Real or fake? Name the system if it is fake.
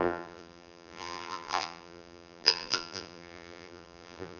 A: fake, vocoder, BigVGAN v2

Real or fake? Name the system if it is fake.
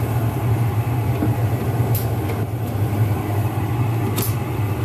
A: real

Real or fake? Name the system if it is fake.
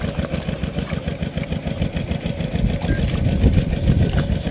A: real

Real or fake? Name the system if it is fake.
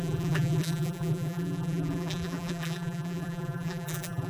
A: fake, vocoder, BigVGAN v2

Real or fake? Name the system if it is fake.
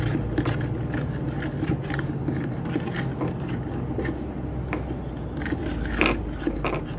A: real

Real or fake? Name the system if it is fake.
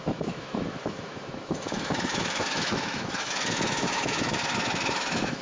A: fake, autoencoder, DAC-VAE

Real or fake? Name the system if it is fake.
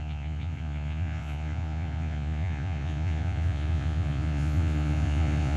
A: fake, vocoder, Vocos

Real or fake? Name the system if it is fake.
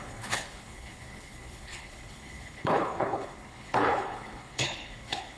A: fake, codec, HILCodec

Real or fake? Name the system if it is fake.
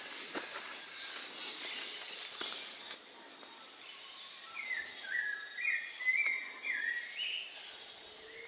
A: real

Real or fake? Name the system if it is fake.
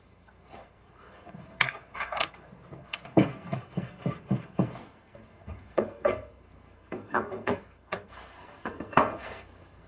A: fake, codec, SNAC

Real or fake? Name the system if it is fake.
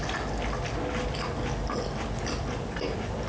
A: real